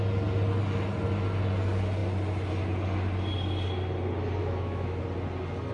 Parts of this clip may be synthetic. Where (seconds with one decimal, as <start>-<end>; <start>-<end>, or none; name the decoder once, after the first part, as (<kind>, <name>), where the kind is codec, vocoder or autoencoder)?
4.4-5.0 (autoencoder, DAC-VAE)